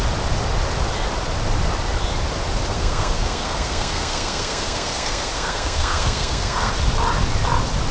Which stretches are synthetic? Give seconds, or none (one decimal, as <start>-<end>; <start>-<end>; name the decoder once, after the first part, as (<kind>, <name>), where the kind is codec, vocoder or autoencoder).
2.7-6.7 (codec, SNAC)